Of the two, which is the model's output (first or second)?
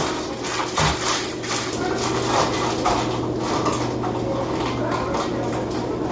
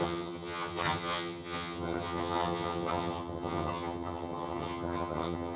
second